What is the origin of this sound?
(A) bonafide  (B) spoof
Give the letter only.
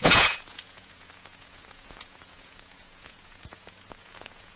B